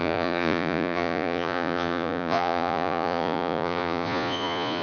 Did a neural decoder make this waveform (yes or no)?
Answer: yes